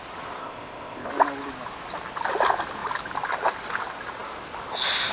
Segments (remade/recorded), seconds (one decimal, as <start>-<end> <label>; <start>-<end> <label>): 0.0-0.4 recorded; 0.4-1.1 remade; 1.1-5.1 recorded